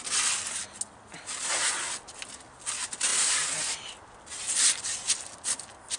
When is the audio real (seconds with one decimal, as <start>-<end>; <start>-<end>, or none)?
0.0-6.0